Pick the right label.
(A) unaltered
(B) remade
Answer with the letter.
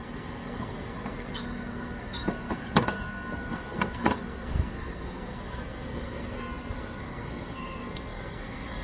B